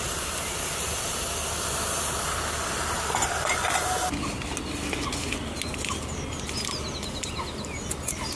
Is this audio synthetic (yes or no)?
no